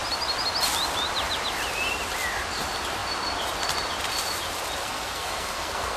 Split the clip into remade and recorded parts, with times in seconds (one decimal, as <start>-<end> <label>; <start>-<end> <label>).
0.0-4.8 recorded; 4.8-6.0 remade